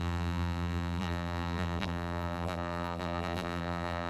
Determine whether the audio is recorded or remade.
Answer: remade